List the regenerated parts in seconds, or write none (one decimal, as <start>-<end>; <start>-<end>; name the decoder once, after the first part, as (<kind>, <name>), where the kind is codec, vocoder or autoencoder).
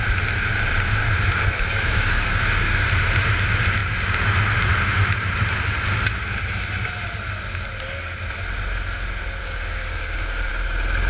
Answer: 1.0-2.9 (codec, DAC); 9.4-10.5